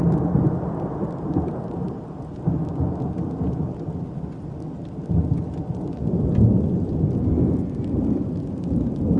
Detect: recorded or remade recorded